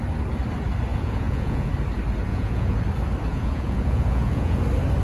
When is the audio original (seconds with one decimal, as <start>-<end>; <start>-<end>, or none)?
0.0-0.9; 1.7-2.3; 2.8-3.3; 4.6-5.0